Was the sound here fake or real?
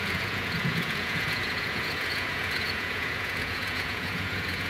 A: fake